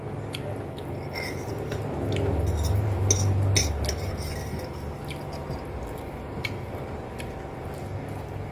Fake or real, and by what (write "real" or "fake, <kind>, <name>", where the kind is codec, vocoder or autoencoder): real